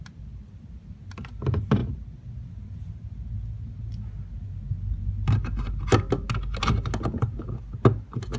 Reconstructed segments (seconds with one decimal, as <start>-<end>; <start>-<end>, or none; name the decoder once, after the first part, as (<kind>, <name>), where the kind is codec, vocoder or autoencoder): none